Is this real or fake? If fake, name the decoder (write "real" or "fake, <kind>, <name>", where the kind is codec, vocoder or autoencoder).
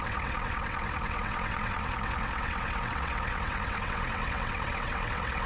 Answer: fake, vocoder, WaveNeXt